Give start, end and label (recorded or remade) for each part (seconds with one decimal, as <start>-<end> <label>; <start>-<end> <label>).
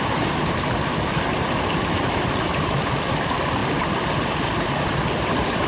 0.0-3.6 recorded; 3.6-5.3 remade; 5.3-5.7 recorded